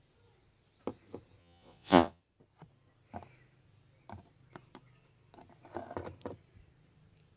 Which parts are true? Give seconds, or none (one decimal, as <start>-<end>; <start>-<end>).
0.0-1.4; 2.2-7.4